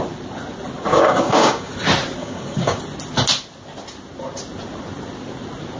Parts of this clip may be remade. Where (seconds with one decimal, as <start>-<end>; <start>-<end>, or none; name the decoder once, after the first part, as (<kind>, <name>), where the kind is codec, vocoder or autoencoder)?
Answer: 0.9-1.7 (codec, DAC); 2.2-2.8